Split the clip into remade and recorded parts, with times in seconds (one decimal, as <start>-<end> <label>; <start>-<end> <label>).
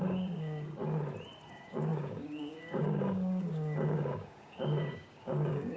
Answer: 0.0-0.8 remade; 0.8-1.5 recorded; 1.5-5.8 remade